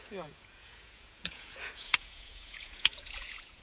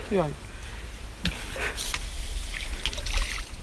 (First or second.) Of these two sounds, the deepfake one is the first